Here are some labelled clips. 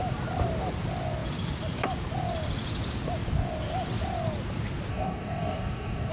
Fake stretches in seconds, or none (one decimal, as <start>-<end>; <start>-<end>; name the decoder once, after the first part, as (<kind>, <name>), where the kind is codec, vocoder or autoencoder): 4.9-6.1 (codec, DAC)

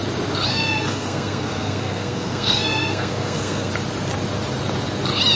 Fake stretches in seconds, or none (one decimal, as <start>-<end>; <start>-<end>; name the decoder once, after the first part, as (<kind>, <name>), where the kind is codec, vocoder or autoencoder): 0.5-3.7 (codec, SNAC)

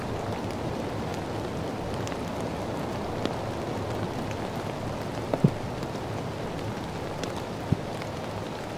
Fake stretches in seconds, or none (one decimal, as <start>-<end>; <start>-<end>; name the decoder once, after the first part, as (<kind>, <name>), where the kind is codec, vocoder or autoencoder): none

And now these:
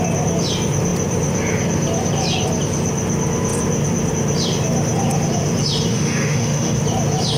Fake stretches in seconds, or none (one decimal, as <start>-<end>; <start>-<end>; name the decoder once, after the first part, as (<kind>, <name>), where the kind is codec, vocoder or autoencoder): 5.9-6.8 (autoencoder, DAC-VAE)

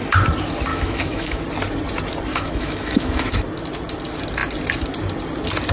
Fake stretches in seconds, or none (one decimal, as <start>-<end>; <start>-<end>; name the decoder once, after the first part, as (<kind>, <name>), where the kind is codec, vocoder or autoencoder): 0.7-1.4 (autoencoder, DAC-VAE); 2.3-3.4

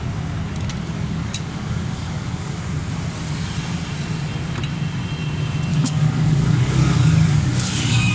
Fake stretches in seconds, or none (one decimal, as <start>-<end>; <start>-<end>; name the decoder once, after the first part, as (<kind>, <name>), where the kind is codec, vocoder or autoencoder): 0.7-2.7 (codec, DAC); 5.7-8.1

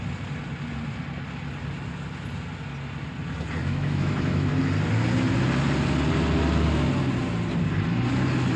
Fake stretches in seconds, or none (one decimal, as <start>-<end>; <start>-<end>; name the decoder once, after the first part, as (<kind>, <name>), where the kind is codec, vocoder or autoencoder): 3.6-4.6 (autoencoder, DAC-VAE)

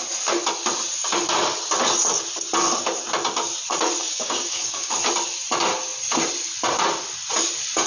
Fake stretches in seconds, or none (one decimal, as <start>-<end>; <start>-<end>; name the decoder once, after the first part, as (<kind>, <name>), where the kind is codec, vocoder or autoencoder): 4.0-4.9 (codec, DAC)